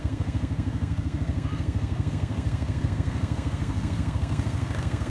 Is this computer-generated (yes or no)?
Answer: yes